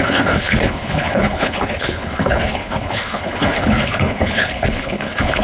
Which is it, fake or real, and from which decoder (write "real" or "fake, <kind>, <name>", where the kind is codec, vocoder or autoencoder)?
fake, codec, HILCodec